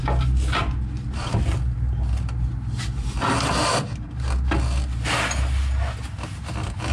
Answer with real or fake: real